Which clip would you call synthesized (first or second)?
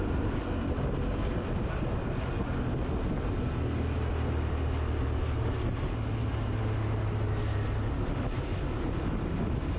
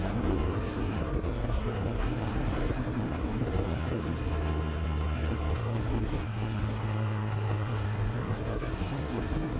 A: second